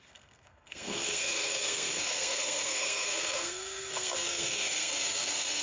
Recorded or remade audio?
remade